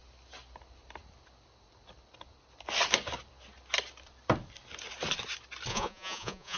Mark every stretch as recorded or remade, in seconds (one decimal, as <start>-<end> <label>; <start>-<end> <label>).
0.0-5.7 recorded; 5.7-6.6 remade